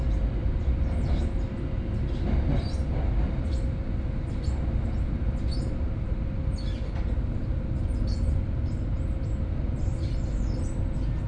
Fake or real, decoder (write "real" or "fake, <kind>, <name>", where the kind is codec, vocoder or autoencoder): real